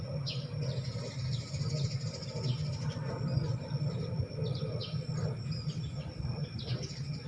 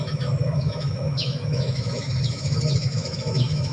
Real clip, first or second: first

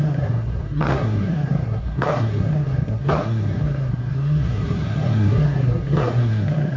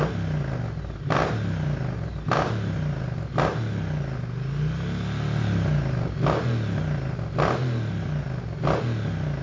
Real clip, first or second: second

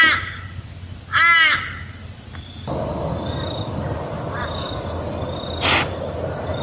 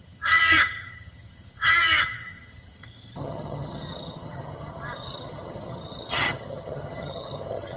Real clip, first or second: first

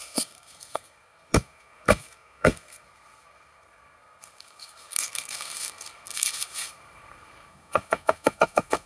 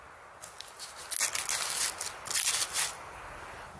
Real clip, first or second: second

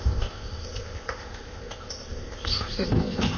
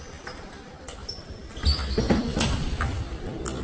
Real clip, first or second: second